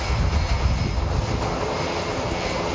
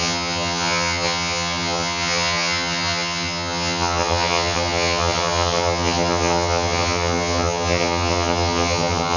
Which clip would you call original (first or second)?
first